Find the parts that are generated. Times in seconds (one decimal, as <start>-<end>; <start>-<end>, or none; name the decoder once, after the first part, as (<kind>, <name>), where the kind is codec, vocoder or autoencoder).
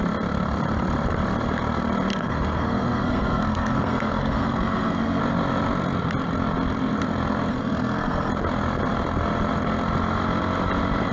2.1-5.2 (codec, SNAC); 7.5-8.3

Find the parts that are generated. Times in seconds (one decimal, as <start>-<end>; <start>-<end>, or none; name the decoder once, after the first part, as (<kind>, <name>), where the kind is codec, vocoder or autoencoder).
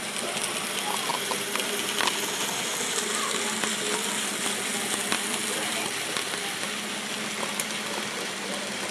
none